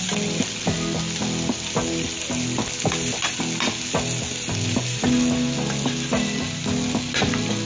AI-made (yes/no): no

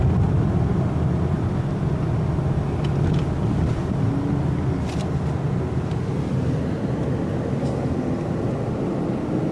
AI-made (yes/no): no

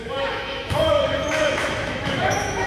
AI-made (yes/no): yes